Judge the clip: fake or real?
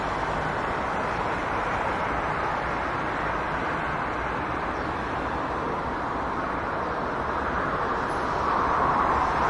real